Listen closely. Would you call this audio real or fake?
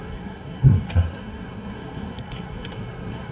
fake